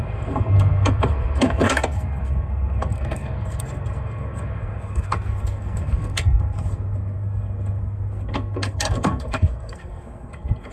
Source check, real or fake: fake